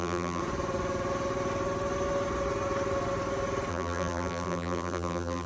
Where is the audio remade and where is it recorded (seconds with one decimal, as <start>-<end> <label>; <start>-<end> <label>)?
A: 0.0-0.4 remade; 0.4-3.7 recorded; 3.7-5.5 remade